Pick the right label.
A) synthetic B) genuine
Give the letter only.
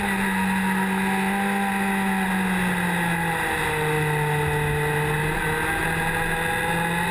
B